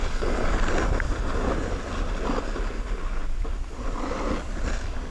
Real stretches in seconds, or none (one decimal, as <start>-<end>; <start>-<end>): 0.0-5.1